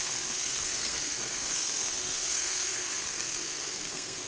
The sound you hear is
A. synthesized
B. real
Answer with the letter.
A